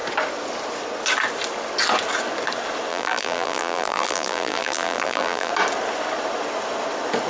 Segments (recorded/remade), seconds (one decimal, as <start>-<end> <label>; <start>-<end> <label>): 0.0-2.9 recorded; 2.9-5.5 remade; 5.5-7.3 recorded

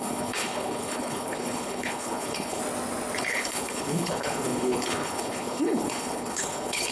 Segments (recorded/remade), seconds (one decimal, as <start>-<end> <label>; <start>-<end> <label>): 0.0-2.6 remade; 2.6-3.2 recorded; 3.2-6.9 remade

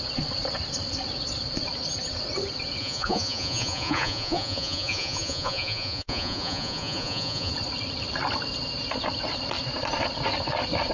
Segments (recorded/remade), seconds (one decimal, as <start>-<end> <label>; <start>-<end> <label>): 0.0-2.8 recorded; 2.8-7.5 remade; 7.5-10.9 recorded

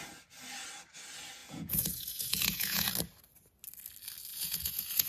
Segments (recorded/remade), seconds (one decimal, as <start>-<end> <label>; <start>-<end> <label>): 0.0-1.4 recorded; 1.4-2.9 remade; 2.9-4.3 recorded; 4.3-5.1 remade

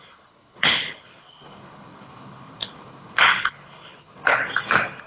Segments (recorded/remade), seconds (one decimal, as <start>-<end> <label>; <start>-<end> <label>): 0.0-4.4 remade; 4.4-5.1 recorded

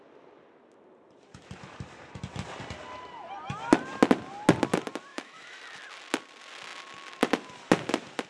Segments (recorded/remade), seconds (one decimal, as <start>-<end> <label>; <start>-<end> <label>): 0.0-5.1 recorded; 5.1-5.6 remade; 5.6-8.3 recorded

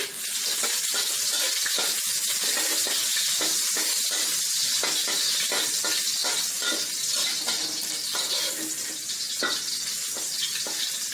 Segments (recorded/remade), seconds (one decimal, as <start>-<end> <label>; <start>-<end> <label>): 0.0-11.1 recorded